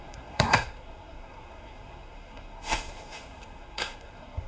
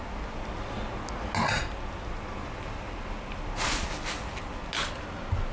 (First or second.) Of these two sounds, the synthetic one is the first